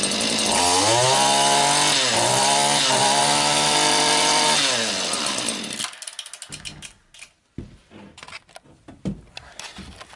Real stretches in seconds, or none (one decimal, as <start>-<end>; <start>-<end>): 0.0-10.2

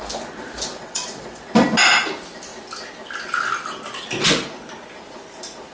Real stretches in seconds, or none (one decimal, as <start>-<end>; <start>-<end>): 0.0-0.8; 1.4-5.7

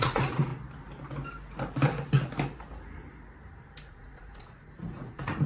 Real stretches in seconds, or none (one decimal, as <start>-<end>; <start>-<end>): 0.5-3.8

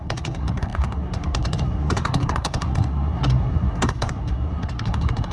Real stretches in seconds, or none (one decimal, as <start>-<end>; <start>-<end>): none